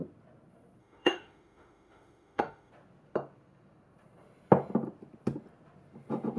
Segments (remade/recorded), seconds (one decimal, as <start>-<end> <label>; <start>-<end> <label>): 0.0-0.8 recorded; 0.8-2.7 remade; 2.7-6.4 recorded